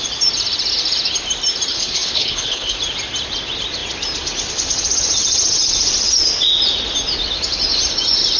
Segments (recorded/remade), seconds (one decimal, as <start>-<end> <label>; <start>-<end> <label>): 0.0-1.7 recorded; 1.7-2.8 remade; 2.8-8.4 recorded